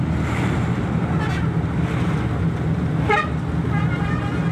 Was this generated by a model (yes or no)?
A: no